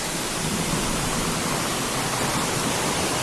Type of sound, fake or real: real